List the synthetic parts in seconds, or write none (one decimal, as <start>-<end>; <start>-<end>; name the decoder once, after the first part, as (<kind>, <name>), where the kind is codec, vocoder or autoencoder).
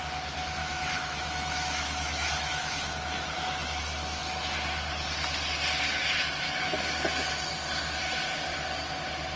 0.6-3.8 (autoencoder, DAC-VAE)